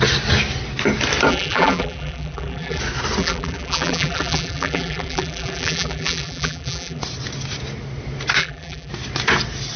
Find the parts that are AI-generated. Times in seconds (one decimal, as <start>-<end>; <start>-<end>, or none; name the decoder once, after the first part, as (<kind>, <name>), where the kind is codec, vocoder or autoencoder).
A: 1.3-2.8 (vocoder, BigVGAN v2); 3.2-7.0; 8.4-8.9